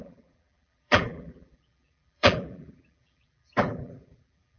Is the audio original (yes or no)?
no